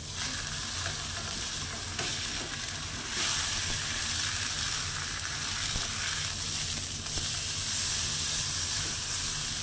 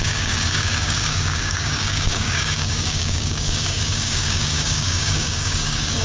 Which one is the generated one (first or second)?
second